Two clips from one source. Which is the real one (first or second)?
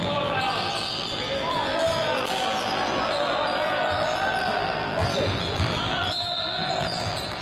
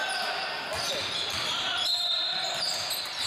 second